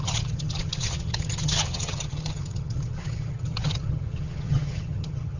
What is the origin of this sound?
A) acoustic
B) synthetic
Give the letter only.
B